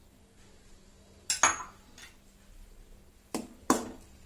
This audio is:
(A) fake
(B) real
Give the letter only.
B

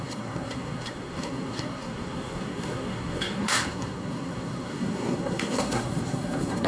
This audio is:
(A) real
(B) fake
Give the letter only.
B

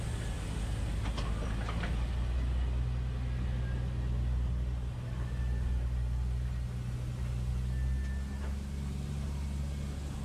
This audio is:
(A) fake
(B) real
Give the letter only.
B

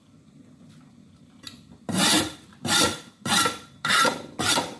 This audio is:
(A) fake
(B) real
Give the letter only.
A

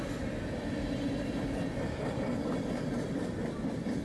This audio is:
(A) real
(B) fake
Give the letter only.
A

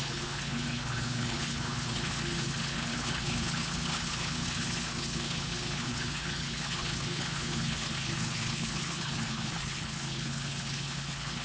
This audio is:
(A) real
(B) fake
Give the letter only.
B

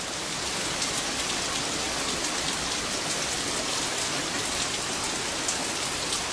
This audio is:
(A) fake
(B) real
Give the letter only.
B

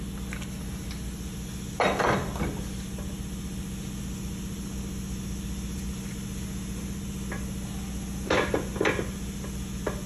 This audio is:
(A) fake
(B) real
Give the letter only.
B